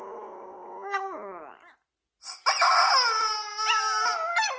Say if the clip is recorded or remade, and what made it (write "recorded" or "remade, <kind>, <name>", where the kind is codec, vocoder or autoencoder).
recorded